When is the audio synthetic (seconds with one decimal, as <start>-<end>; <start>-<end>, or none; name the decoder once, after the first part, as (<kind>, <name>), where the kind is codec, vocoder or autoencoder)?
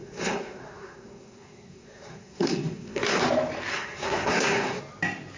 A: 0.0-3.2 (codec, SNAC); 3.7-4.8